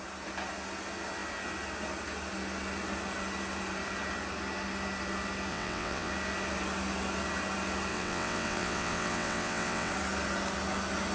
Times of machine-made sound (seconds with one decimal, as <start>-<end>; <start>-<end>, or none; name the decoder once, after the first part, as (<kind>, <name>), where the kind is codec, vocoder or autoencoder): 5.5-6.1 (vocoder, WaveNeXt); 7.9-9.9